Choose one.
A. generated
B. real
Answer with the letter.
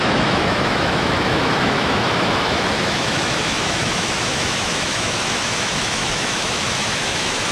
A